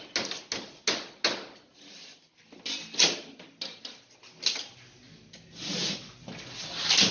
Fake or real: real